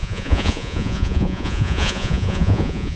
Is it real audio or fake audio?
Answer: fake